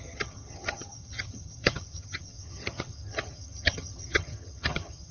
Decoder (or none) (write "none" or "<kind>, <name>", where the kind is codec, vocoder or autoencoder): vocoder, HiFi-GAN